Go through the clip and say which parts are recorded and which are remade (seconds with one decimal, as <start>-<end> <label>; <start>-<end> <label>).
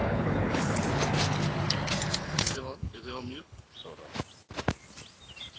0.0-0.8 remade; 0.8-2.2 recorded; 2.2-3.6 remade; 3.6-5.6 recorded